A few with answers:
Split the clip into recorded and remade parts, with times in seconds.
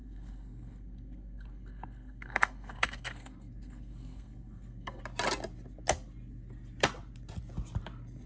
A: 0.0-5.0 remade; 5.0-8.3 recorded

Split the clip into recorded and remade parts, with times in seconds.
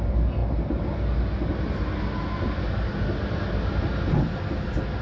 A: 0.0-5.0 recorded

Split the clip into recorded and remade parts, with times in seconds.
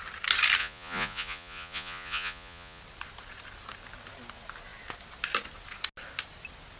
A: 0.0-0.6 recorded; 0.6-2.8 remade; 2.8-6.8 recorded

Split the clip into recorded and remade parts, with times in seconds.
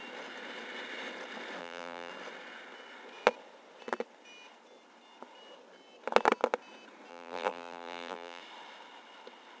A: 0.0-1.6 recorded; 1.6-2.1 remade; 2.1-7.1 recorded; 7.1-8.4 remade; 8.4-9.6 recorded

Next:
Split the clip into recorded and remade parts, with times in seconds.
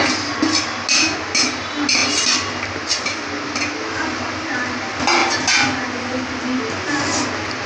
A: 0.0-7.7 recorded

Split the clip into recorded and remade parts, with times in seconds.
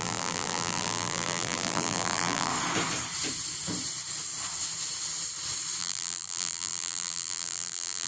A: 0.0-2.5 remade; 2.5-5.8 recorded; 5.8-8.1 remade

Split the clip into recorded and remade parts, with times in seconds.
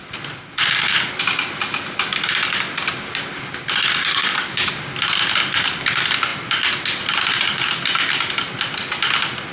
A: 0.0-4.1 recorded; 4.1-4.7 remade; 4.7-9.5 recorded